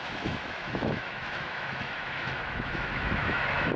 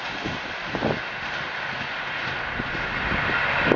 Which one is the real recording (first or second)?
second